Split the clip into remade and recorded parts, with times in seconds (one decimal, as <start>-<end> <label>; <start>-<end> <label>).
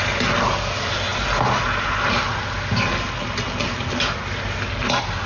0.0-5.3 recorded